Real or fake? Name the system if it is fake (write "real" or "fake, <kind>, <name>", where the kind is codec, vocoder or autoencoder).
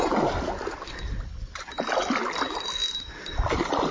real